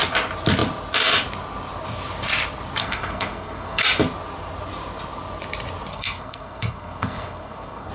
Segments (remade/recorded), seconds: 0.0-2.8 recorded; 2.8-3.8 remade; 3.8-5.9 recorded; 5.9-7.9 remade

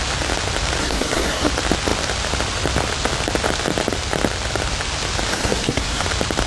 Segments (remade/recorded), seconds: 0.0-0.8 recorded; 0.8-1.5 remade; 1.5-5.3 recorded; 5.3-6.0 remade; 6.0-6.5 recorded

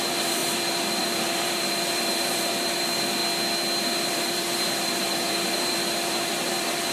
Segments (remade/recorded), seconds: 0.0-3.2 remade; 3.2-3.8 recorded; 3.8-6.9 remade

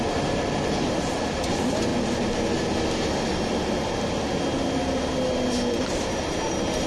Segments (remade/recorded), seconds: 0.0-1.9 remade; 1.9-5.8 recorded; 5.8-6.9 remade

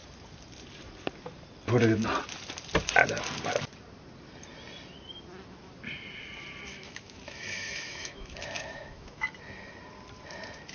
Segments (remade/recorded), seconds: 0.0-6.7 recorded; 6.7-9.3 remade; 9.3-10.7 recorded